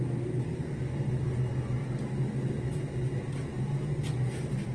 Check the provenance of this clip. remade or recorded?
recorded